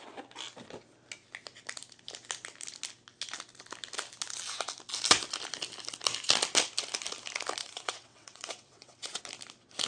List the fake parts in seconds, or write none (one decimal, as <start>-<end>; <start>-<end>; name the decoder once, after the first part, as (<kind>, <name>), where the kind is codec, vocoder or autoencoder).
7.6-9.2 (vocoder, WaveNeXt)